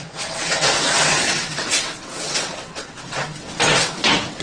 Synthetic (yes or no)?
yes